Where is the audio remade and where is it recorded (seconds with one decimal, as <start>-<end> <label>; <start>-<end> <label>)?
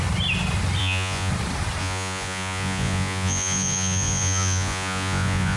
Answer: 0.0-0.8 recorded; 0.8-1.3 remade; 1.3-1.8 recorded; 1.8-5.6 remade